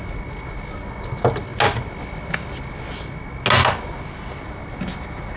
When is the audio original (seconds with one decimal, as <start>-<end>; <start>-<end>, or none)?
0.0-5.4